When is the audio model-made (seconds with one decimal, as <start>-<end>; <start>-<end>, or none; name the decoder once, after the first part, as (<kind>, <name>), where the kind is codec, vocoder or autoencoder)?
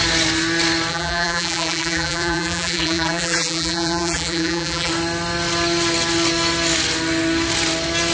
0.9-4.9 (vocoder, BigVGAN v2)